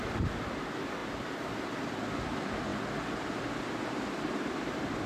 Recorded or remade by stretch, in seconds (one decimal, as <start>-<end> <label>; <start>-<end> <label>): 0.0-5.1 recorded